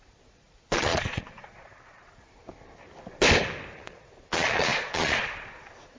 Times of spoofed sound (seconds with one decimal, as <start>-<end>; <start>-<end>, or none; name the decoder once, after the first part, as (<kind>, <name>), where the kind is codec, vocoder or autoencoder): 0.0-2.5 (vocoder, Vocos); 3.7-6.0